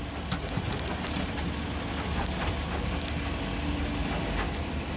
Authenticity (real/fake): real